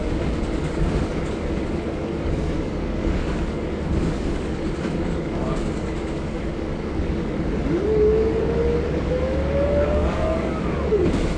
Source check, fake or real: fake